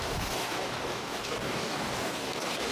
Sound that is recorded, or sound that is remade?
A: remade